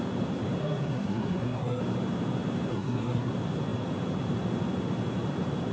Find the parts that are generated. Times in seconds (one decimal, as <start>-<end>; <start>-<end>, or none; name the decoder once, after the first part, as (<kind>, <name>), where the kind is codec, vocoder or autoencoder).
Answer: 0.6-1.8 (codec, SNAC); 2.7-3.3